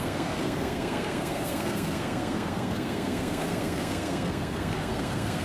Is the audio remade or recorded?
remade